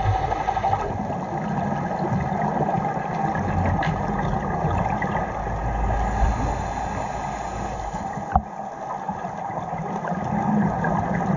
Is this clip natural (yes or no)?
yes